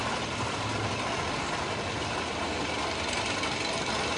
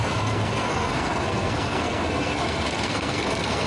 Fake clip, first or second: second